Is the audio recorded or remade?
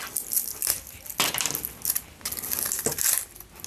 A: recorded